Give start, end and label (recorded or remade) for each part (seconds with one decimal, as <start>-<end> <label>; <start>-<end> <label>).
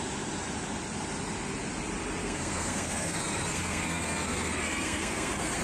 0.0-2.2 recorded; 2.2-5.6 remade